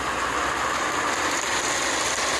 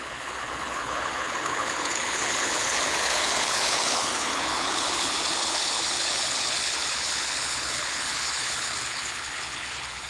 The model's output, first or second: second